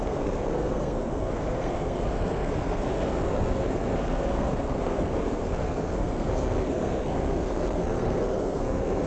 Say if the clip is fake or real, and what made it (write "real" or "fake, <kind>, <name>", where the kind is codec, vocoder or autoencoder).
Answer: fake, codec, SNAC